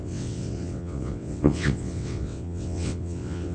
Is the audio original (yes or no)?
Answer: no